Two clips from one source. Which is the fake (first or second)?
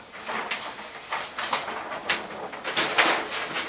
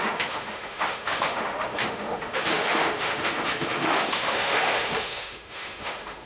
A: second